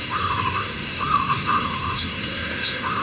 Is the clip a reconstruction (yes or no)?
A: yes